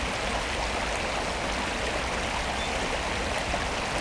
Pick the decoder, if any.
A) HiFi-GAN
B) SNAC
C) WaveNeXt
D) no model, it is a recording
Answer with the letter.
D